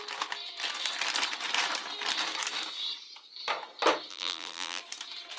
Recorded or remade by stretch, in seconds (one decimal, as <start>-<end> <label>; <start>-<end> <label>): 0.0-4.1 recorded; 4.1-4.8 remade; 4.8-5.4 recorded